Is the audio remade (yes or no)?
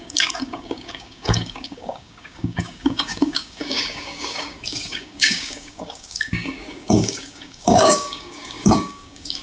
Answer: yes